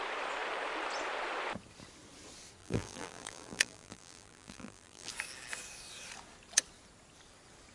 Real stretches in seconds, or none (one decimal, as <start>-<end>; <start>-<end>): 0.0-2.6; 5.1-7.7